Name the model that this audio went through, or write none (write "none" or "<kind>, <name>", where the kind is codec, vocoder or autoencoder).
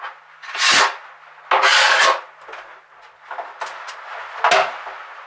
none